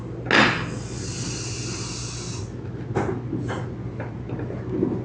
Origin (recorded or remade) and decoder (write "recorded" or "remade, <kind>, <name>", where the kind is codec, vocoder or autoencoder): recorded